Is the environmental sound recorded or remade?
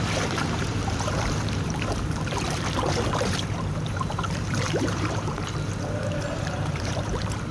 remade